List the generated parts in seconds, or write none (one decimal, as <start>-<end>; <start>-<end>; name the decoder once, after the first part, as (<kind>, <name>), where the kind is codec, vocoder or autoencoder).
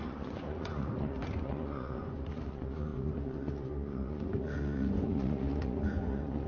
0.0-6.5 (vocoder, Vocos)